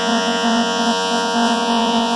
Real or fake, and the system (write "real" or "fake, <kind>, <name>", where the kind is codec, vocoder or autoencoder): fake, vocoder, Vocos